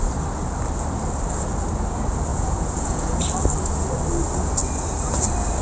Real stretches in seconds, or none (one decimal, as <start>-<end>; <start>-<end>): 0.0-2.3; 3.2-5.6